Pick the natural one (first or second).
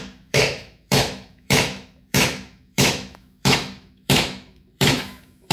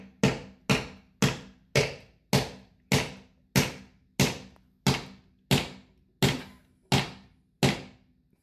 second